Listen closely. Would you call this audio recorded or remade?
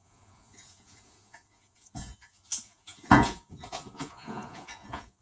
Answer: remade